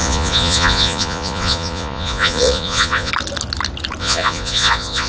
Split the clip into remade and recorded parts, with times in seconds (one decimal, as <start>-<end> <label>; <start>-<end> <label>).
0.0-3.1 remade; 3.1-4.0 recorded; 4.0-5.1 remade